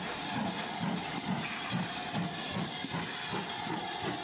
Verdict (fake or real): real